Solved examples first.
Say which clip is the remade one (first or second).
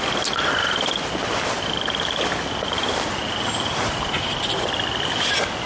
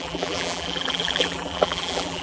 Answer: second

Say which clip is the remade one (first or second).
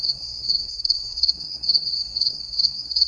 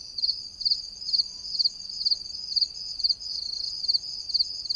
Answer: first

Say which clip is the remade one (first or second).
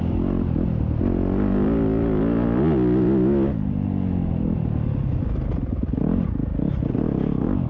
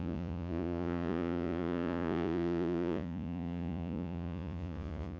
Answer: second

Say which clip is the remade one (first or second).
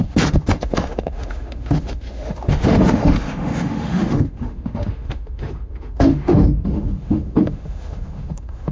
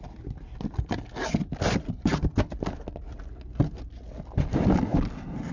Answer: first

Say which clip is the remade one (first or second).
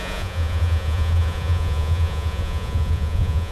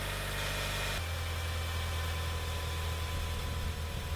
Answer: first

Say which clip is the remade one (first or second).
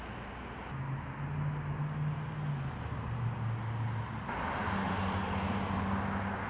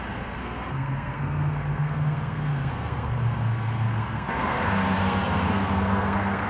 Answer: second